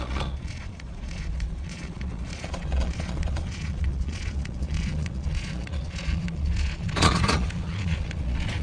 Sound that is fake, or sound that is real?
fake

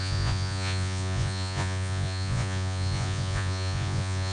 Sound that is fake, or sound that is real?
fake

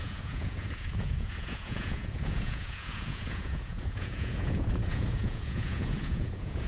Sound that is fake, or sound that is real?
fake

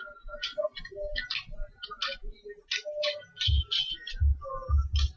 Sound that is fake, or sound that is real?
real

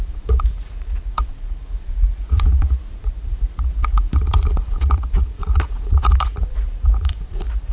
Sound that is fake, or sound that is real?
fake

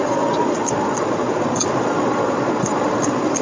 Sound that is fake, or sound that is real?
fake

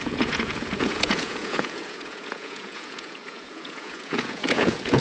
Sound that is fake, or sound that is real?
fake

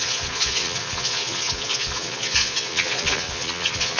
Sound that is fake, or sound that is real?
fake